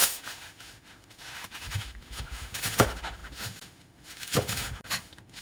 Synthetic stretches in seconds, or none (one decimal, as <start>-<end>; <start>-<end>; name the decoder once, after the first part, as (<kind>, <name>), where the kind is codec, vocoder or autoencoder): 0.0-5.4 (autoencoder, DAC-VAE)